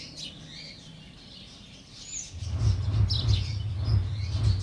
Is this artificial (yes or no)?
no